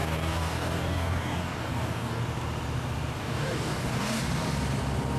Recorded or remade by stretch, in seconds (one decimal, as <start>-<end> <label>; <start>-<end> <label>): 0.0-2.2 remade; 2.2-3.2 recorded; 3.2-4.2 remade; 4.2-5.2 recorded